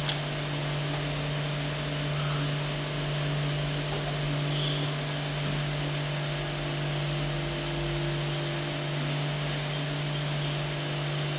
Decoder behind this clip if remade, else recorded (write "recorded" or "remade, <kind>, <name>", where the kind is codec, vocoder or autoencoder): recorded